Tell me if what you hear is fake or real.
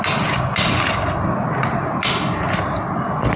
real